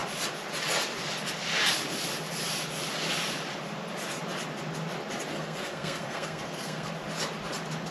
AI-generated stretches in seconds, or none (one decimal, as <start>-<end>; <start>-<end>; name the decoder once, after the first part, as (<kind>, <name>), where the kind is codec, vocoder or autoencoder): 5.3-6.9 (codec, SNAC)